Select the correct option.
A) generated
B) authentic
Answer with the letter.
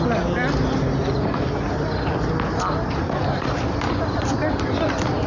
B